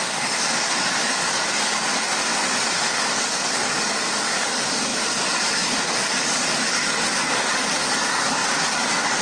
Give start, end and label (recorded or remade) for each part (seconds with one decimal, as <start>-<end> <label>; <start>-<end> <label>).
0.0-2.3 remade; 2.3-2.9 recorded; 2.9-9.2 remade